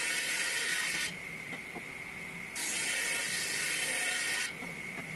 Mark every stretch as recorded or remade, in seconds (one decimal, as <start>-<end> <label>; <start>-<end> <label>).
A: 0.0-1.5 remade; 1.5-4.6 recorded; 4.6-5.2 remade